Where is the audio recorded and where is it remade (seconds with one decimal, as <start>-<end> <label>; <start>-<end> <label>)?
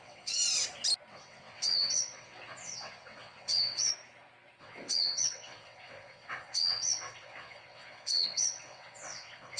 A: 0.0-0.4 remade; 0.4-1.1 recorded; 1.1-3.9 remade; 3.9-4.6 recorded; 4.6-9.6 remade